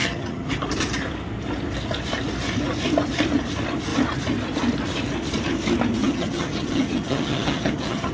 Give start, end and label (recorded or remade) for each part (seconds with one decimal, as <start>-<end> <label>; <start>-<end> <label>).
0.0-0.5 remade; 0.5-6.0 recorded; 6.0-8.1 remade